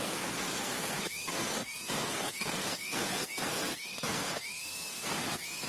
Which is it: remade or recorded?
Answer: remade